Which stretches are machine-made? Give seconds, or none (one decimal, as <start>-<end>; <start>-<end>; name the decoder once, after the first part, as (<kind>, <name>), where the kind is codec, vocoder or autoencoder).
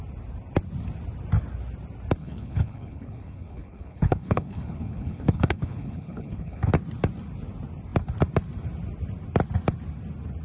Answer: 2.2-6.7 (codec, HILCodec)